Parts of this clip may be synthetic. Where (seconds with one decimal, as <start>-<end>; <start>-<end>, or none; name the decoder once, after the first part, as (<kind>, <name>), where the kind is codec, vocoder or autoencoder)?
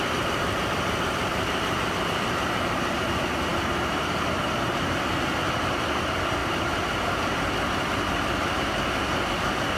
0.0-1.3 (vocoder, BigVGAN v2); 2.1-9.8